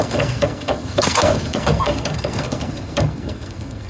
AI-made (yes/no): yes